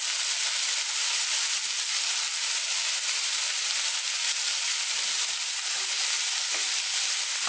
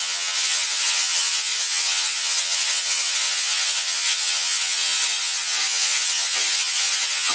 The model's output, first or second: second